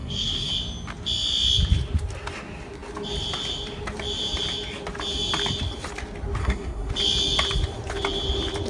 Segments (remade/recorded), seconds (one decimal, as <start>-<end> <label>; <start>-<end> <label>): 0.0-0.5 remade; 0.5-6.4 recorded; 6.4-6.9 remade; 6.9-8.7 recorded